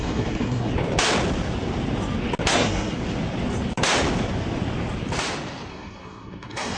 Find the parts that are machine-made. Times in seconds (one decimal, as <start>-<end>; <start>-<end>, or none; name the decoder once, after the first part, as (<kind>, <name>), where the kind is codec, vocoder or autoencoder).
0.0-0.7 (codec, SNAC); 2.5-3.0; 5.7-6.8